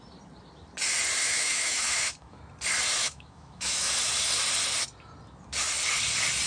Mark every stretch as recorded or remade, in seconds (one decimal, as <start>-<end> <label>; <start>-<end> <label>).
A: 0.0-1.2 recorded; 1.2-2.4 remade; 2.4-3.0 recorded; 3.0-3.9 remade; 3.9-6.5 recorded

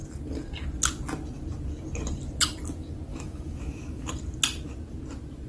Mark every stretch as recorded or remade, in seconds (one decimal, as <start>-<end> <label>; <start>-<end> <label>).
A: 0.0-3.1 recorded; 3.1-4.1 remade; 4.1-5.5 recorded

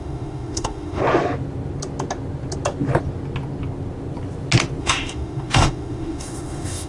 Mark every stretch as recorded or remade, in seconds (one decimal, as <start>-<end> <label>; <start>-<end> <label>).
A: 0.0-1.0 remade; 1.0-4.8 recorded; 4.8-6.9 remade

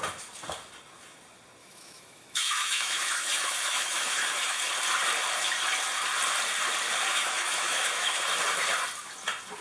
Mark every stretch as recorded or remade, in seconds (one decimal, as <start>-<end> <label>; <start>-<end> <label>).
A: 0.0-1.6 recorded; 1.6-4.6 remade; 4.6-7.1 recorded; 7.1-8.2 remade; 8.2-9.6 recorded

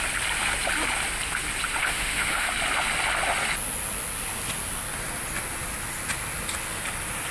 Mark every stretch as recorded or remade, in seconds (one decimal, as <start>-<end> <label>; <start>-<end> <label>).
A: 0.0-1.8 recorded; 1.8-2.5 remade; 2.5-7.3 recorded